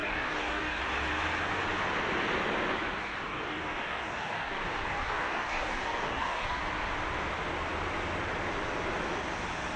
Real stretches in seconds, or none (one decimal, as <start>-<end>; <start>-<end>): 0.8-3.0; 6.6-9.8